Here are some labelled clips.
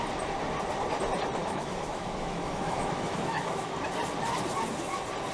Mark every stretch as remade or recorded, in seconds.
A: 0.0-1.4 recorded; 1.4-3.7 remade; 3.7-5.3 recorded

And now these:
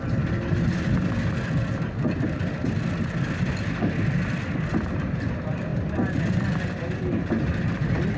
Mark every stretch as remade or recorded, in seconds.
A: 0.0-8.2 recorded

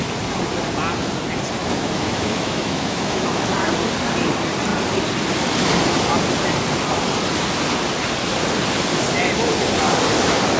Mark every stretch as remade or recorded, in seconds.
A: 0.0-1.6 recorded; 1.6-3.5 remade; 3.5-10.6 recorded

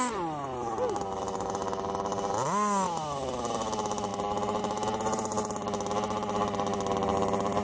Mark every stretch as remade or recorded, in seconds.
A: 0.0-7.6 recorded

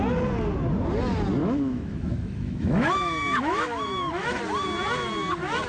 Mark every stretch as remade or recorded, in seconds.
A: 0.0-1.4 recorded; 1.4-4.4 remade; 4.4-5.7 recorded

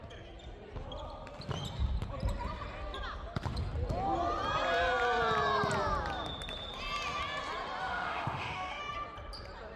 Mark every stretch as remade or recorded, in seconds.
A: 0.0-7.8 recorded; 7.8-8.8 remade; 8.8-9.8 recorded

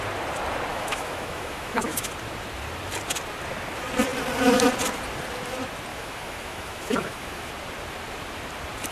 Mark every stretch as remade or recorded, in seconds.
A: 0.0-0.7 recorded; 0.7-2.1 remade; 2.1-5.9 recorded; 5.9-7.5 remade; 7.5-8.9 recorded